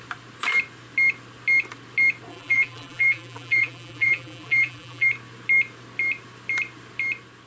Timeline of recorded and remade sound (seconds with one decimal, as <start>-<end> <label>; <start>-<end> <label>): 0.0-2.3 recorded; 2.3-5.1 remade; 5.1-7.5 recorded